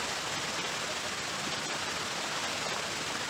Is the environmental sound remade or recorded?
recorded